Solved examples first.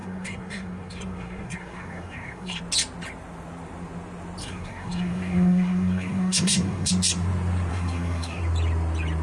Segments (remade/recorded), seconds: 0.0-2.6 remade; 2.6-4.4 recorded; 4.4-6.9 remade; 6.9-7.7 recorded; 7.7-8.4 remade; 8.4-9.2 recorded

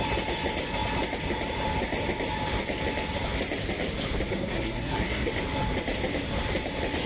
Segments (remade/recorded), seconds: 0.0-4.3 recorded; 4.3-5.3 remade; 5.3-7.1 recorded

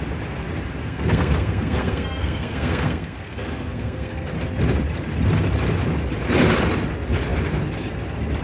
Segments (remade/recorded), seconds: 0.0-0.8 recorded; 0.8-4.3 remade; 4.3-8.4 recorded

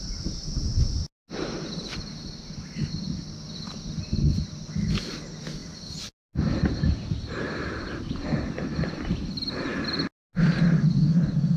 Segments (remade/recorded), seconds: 0.0-11.6 recorded